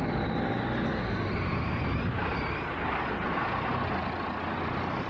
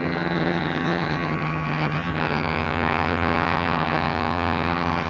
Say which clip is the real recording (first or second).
first